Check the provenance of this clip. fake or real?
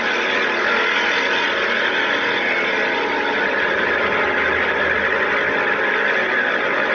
real